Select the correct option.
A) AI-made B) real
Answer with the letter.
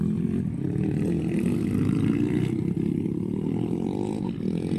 B